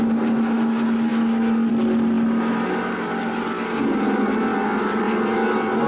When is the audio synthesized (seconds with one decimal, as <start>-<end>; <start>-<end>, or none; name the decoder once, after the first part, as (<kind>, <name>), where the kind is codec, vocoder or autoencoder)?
none